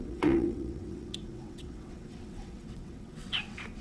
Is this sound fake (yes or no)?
yes